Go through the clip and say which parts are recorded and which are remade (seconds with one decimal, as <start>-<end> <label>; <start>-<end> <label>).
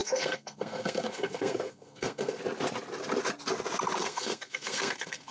0.0-2.4 remade; 2.4-4.0 recorded; 4.0-5.3 remade